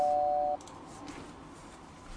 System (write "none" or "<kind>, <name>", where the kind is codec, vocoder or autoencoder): none